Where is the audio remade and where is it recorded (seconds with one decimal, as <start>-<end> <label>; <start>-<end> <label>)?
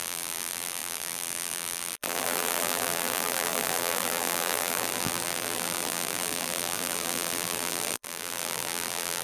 0.0-9.2 remade